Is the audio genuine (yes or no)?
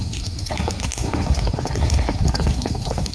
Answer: no